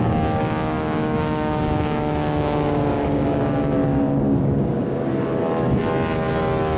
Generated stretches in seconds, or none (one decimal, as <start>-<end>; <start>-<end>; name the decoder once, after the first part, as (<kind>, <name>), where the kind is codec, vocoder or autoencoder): 0.0-5.1 (codec, DAC)